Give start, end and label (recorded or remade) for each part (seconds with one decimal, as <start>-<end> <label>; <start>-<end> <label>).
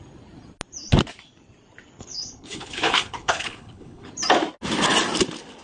0.0-2.0 recorded; 2.0-4.1 remade; 4.1-5.6 recorded